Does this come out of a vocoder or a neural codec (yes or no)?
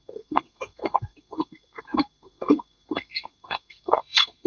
yes